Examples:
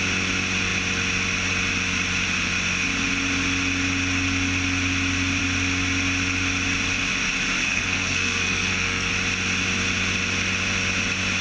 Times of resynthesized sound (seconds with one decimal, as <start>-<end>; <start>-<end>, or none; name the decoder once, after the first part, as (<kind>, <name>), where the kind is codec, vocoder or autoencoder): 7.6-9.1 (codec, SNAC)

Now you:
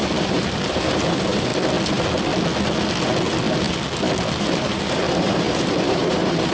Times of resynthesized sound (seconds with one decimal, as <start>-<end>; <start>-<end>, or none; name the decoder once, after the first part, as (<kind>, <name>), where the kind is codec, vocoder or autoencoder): 0.0-1.5 (vocoder, BigVGAN v2); 4.4-6.5

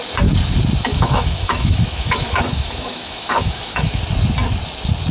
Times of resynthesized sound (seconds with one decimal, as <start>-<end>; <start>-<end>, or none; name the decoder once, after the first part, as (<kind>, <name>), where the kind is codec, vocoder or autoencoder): 0.9-4.0 (autoencoder, DAC-VAE)